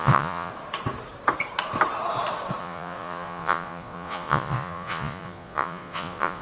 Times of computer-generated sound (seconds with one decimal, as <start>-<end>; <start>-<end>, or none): 0.0-0.5; 2.6-6.4